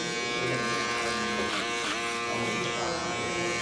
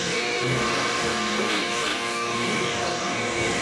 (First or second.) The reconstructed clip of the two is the second